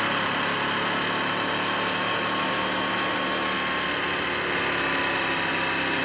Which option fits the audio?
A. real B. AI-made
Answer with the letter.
A